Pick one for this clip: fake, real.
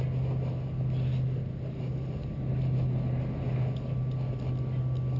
real